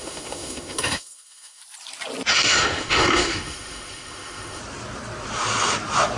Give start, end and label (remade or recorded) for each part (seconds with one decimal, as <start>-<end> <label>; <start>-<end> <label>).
0.0-1.6 remade; 1.6-2.3 recorded; 2.3-4.6 remade; 4.6-6.2 recorded